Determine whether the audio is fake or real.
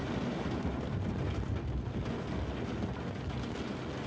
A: real